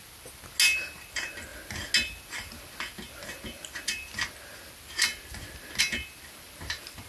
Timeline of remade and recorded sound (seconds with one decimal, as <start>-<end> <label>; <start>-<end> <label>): 0.0-7.1 recorded